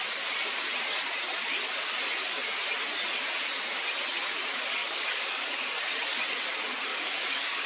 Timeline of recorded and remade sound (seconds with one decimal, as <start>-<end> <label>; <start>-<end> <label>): 0.0-4.8 recorded; 4.8-5.7 remade; 5.7-6.9 recorded; 6.9-7.7 remade